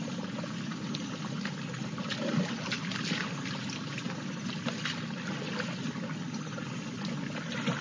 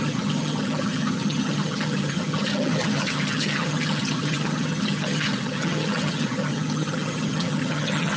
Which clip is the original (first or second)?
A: first